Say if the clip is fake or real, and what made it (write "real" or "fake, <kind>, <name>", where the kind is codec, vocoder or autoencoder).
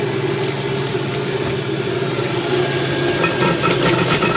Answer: real